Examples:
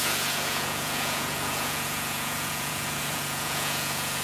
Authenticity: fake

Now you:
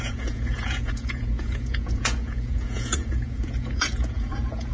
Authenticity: fake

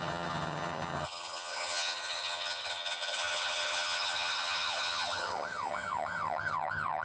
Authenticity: fake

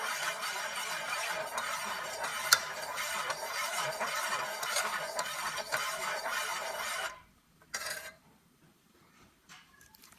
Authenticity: fake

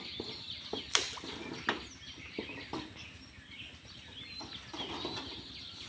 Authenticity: real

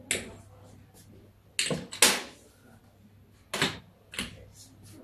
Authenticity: real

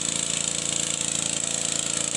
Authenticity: real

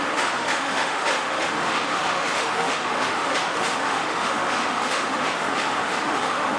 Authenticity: fake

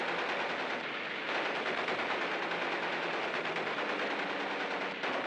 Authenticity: real